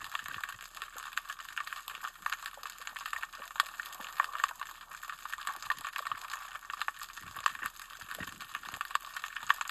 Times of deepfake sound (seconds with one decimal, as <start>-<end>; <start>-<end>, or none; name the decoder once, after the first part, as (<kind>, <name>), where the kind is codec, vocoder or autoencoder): none